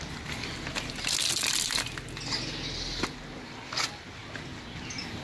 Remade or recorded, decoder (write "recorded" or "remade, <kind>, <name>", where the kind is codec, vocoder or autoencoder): recorded